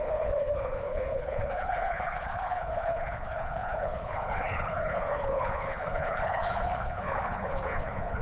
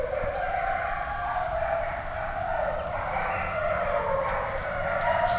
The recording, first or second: second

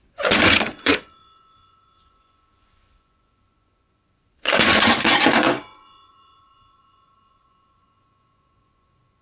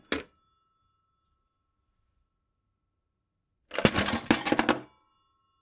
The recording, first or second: second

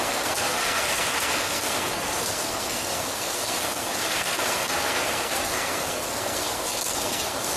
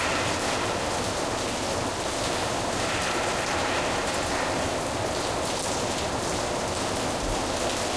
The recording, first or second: second